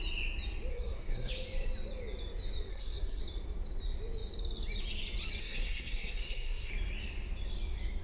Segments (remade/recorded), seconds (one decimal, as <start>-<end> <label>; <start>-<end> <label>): 0.0-0.7 recorded; 0.7-1.3 remade; 1.3-2.7 recorded; 2.7-3.2 remade; 3.2-5.4 recorded; 5.4-6.7 remade; 6.7-8.0 recorded